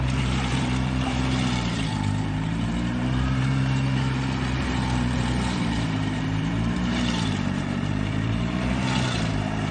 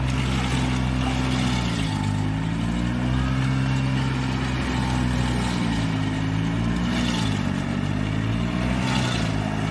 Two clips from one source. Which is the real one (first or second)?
second